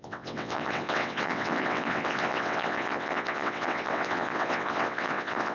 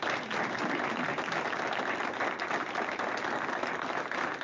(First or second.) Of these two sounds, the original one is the second